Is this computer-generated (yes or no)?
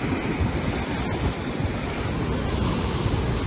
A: no